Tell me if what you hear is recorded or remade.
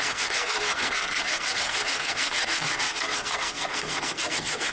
remade